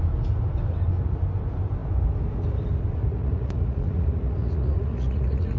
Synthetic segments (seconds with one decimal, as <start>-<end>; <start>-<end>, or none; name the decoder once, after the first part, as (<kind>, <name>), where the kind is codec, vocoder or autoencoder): 3.1-5.6 (vocoder, Vocos)